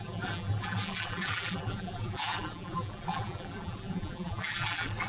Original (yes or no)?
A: no